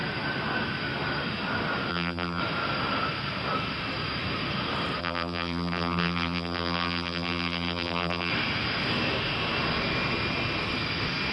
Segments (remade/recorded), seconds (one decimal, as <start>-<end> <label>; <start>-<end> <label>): 0.0-1.9 recorded; 1.9-2.4 remade; 2.4-5.0 recorded; 5.0-8.3 remade; 8.3-11.3 recorded